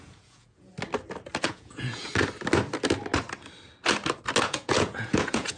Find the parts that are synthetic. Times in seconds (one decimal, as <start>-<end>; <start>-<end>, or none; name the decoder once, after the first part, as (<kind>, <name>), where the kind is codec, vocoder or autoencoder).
0.0-0.7 (vocoder, Vocos); 1.4-2.1; 4.4-5.6